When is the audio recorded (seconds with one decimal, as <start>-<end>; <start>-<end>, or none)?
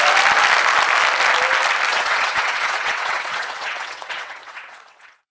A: 0.0-1.9